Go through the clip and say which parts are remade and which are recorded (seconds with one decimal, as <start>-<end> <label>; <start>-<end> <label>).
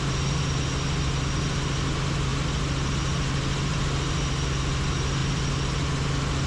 0.0-6.5 recorded